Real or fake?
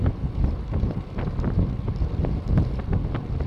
real